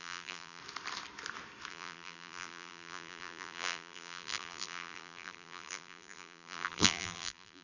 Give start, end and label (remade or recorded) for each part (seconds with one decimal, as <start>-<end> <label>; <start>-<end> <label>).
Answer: 0.0-0.6 remade; 0.6-1.7 recorded; 1.7-7.6 remade